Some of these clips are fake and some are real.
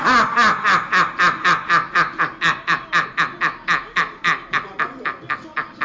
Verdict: real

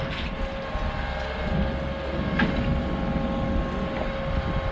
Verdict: real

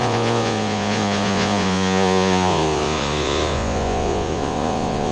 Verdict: fake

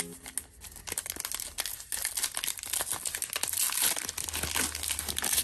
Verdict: real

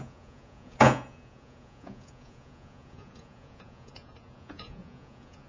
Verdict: fake